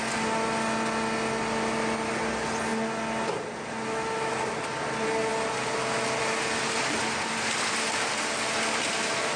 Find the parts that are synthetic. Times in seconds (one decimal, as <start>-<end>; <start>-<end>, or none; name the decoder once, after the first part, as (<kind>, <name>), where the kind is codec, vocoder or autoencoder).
none